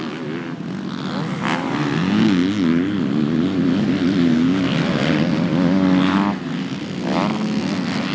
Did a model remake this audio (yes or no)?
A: no